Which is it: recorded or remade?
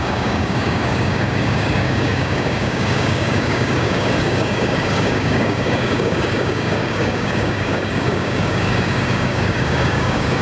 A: remade